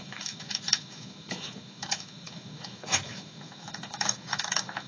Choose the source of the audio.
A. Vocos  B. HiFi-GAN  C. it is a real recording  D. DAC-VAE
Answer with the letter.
D